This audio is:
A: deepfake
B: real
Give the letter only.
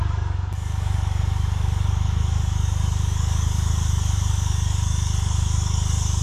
A